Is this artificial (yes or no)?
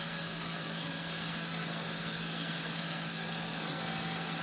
yes